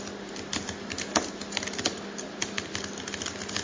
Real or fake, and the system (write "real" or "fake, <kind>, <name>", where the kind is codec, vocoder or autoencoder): real